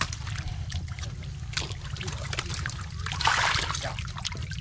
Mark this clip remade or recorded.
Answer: recorded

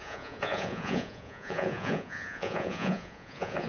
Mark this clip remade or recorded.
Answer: remade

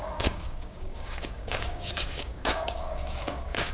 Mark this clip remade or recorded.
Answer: remade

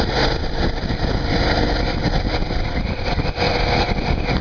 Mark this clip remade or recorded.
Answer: recorded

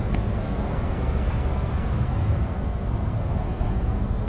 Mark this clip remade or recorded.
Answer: remade